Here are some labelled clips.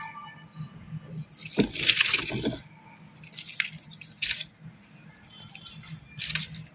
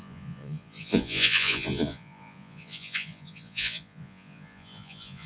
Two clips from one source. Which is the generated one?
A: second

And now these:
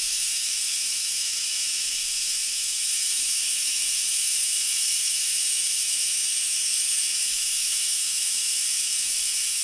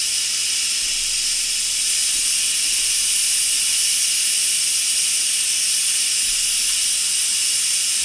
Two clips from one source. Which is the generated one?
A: first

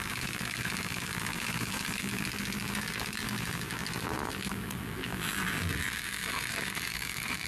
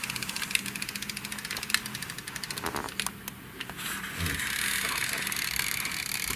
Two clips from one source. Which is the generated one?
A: first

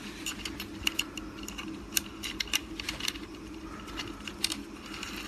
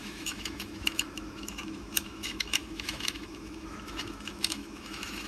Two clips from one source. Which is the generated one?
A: second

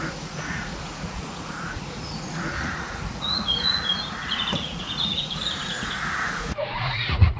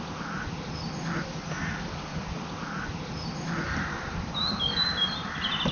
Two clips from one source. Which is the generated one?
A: first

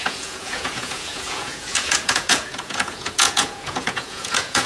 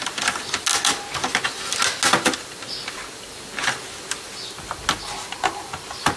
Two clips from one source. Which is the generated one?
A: first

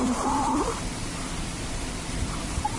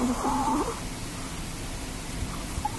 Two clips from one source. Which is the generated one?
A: first